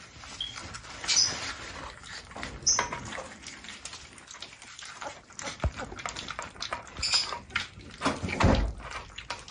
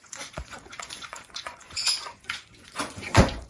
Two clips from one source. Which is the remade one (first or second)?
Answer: second